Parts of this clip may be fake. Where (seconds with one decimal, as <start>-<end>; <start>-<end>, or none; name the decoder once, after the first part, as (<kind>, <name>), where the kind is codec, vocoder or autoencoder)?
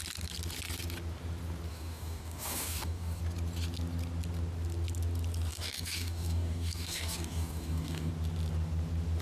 1.7-3.2 (codec, DAC); 5.5-8.1